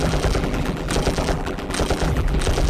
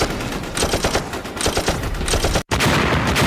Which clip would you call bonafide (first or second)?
second